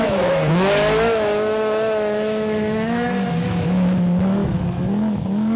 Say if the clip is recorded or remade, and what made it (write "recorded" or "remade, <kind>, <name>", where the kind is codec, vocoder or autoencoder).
remade, autoencoder, DAC-VAE